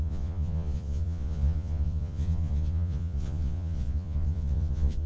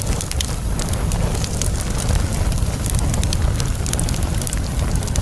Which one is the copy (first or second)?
first